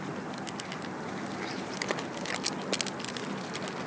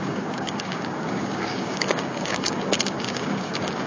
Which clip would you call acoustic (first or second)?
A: first